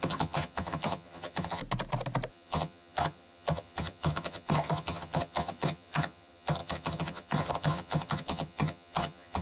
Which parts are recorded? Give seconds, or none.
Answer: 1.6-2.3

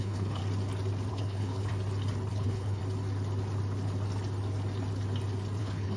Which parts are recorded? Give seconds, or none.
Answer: 0.4-1.1; 1.7-2.3; 2.8-5.6

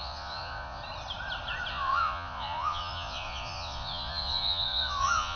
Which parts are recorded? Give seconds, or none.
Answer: 0.8-1.7

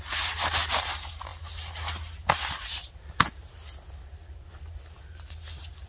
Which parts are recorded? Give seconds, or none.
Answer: 0.0-5.9

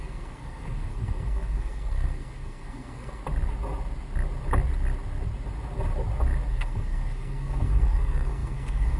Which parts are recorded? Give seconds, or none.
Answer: 3.2-6.5